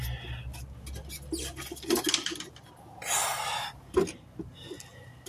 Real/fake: real